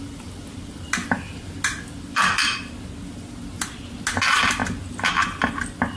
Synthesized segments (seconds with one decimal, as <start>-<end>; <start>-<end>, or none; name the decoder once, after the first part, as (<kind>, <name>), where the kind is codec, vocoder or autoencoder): none